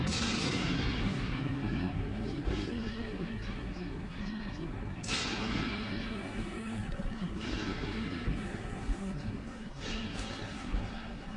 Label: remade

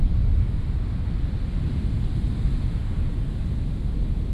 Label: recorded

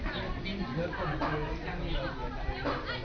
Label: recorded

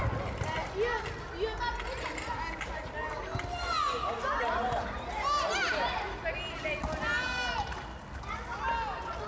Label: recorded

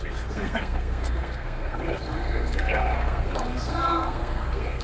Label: remade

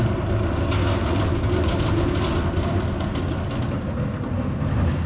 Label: recorded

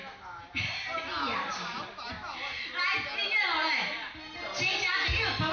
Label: recorded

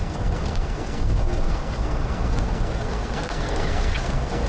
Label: remade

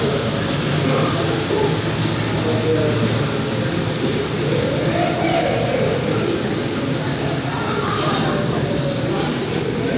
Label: recorded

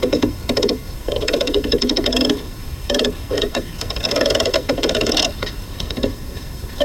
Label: remade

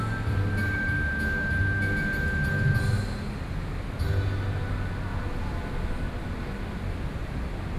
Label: recorded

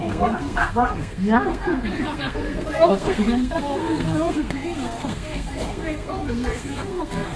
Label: remade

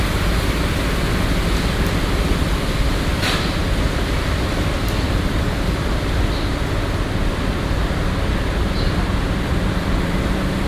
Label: recorded